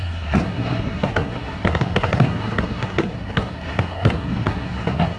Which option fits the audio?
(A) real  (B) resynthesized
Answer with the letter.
B